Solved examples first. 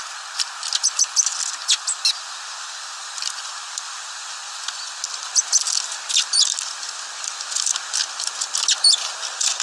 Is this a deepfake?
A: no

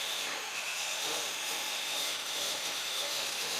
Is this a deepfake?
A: yes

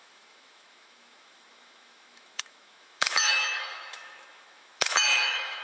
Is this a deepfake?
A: yes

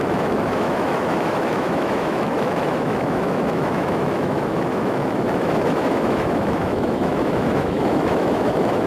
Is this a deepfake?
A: yes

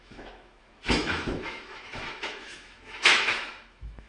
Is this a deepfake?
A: yes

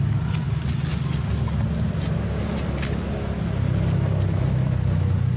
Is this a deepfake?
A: no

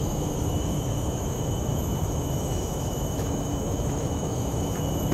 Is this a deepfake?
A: yes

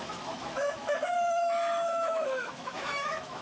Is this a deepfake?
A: yes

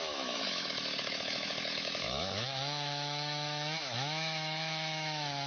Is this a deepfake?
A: yes